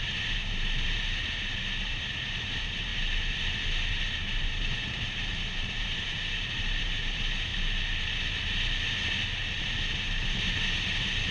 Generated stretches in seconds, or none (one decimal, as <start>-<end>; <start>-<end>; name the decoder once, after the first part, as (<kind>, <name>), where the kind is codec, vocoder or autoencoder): 0.0-2.9 (vocoder, BigVGAN v2); 3.9-7.5; 10.0-11.3